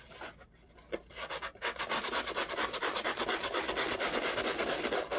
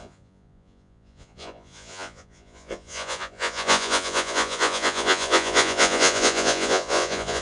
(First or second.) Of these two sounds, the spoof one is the second